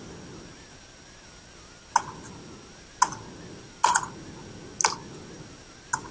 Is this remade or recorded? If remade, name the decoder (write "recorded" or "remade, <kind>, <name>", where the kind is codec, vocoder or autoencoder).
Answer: recorded